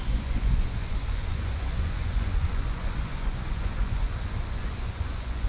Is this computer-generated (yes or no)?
yes